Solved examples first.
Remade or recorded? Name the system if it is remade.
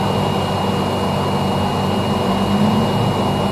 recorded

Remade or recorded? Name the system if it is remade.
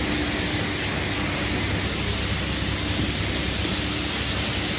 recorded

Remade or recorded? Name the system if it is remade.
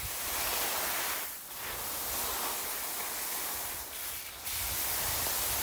recorded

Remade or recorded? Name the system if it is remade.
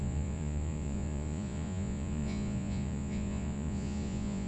remade, vocoder, Vocos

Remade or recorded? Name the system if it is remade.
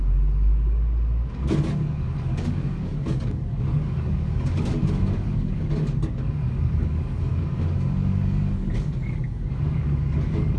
remade, codec, DAC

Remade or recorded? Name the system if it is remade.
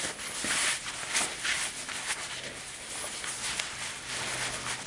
recorded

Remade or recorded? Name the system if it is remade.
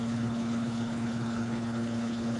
remade, codec, HILCodec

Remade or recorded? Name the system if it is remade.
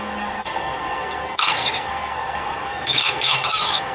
remade, codec, SNAC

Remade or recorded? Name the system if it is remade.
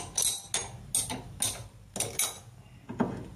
recorded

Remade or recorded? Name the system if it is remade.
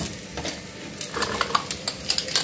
recorded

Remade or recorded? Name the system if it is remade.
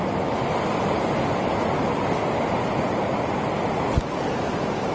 recorded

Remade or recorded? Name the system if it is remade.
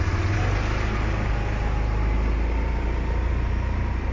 recorded